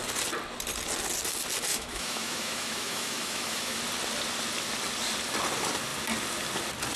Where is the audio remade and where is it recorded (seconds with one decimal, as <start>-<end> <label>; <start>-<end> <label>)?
0.0-1.7 recorded; 1.7-3.8 remade; 3.8-7.0 recorded